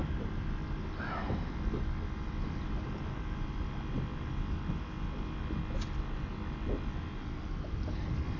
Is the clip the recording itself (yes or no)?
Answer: yes